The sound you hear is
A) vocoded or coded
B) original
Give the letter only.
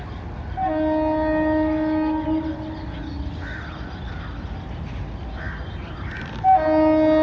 B